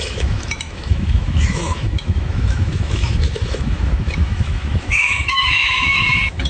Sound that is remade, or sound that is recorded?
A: remade